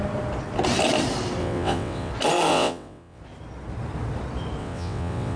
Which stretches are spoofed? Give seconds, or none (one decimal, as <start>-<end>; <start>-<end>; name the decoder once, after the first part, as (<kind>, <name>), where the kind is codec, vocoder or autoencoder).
1.4-2.1 (vocoder, WaveNeXt); 2.5-3.2; 4.6-5.4